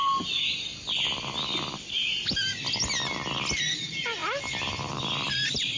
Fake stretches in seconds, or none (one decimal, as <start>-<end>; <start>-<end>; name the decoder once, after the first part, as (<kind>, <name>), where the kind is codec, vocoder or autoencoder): none